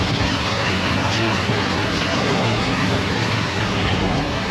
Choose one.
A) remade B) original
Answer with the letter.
A